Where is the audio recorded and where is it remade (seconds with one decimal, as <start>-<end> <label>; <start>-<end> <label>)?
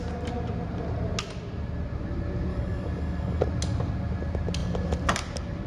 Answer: 0.0-2.5 recorded; 2.5-3.4 remade; 3.4-5.7 recorded